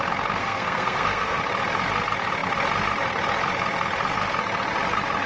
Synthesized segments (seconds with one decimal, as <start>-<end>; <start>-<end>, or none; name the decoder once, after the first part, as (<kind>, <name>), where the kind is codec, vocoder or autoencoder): 0.4-1.4 (codec, SNAC)